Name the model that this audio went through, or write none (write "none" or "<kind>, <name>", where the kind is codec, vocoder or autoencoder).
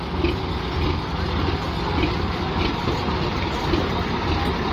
none